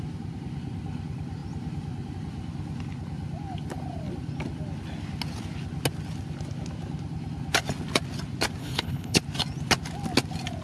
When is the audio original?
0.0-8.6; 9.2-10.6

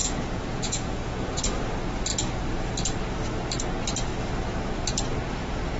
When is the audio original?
1.4-5.8

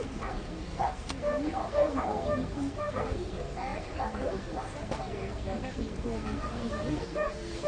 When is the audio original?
none

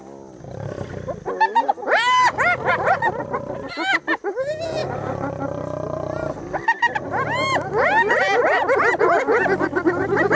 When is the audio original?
0.0-10.4

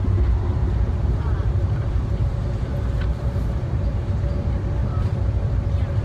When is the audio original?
0.0-0.6; 4.2-4.8; 5.5-6.0

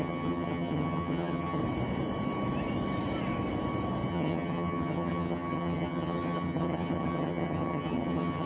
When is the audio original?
1.6-4.1

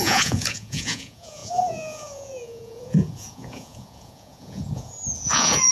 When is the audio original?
none

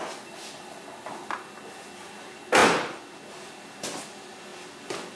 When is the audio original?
0.0-5.2